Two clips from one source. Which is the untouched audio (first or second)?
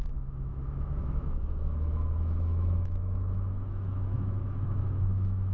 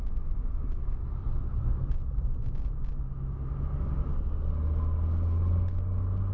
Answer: second